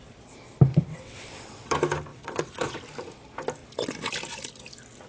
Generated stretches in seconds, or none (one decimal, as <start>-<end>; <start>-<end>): 0.9-1.7; 2.1-2.8